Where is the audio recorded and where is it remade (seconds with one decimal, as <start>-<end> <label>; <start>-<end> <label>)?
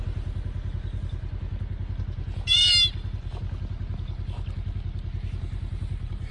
0.0-6.3 recorded